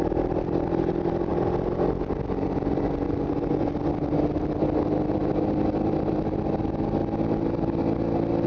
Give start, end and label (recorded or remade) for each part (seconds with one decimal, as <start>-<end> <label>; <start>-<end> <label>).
0.0-8.5 recorded